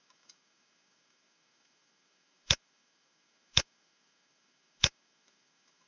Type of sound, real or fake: fake